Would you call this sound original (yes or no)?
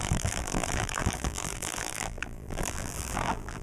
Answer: no